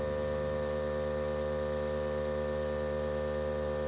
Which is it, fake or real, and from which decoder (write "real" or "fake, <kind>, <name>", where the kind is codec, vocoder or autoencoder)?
real